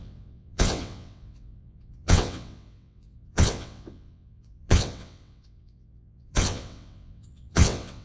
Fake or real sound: fake